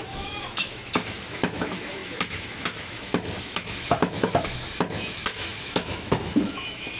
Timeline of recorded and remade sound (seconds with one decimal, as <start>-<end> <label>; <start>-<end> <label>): 0.0-7.0 remade